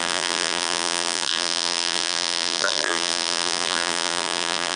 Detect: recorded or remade remade